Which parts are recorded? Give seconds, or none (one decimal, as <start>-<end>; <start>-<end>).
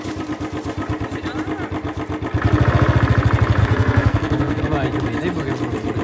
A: 0.0-3.6; 4.6-6.0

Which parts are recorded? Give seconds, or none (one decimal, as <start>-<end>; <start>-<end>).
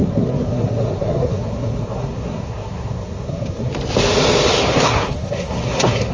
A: 3.7-4.7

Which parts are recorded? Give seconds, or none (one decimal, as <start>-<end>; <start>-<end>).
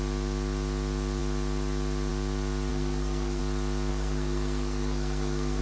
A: 0.0-2.7; 3.4-3.9